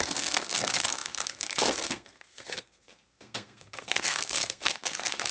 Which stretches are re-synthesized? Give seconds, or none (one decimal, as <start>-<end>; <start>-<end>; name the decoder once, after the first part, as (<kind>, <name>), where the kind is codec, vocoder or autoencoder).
0.0-5.3 (codec, SNAC)